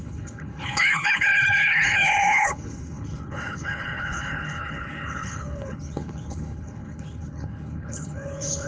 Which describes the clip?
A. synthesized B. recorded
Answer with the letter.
A